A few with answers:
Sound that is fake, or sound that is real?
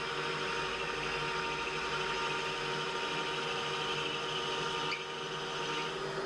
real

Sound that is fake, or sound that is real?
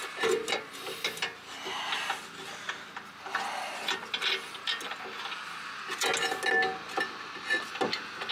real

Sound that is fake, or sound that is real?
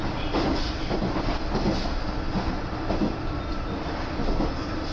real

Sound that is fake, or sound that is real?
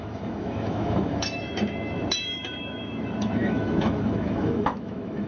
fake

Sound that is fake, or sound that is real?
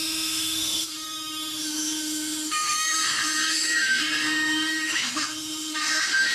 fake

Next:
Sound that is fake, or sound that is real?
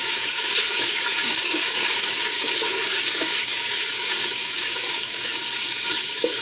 fake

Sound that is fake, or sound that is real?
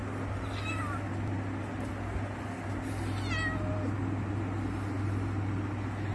real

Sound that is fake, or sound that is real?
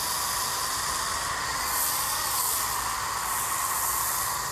real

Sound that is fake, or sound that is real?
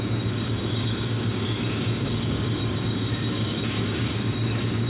fake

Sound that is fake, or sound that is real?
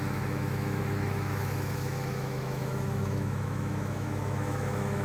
fake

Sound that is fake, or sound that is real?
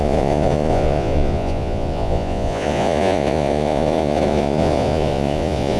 fake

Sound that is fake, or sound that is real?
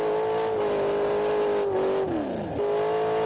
real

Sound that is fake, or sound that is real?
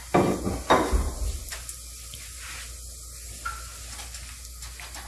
real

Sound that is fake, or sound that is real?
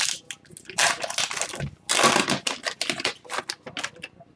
real